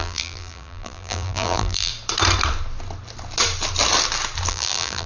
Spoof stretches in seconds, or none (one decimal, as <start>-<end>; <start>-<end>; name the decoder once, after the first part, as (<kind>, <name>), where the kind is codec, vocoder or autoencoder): 0.0-1.9 (vocoder, BigVGAN v2); 4.5-5.1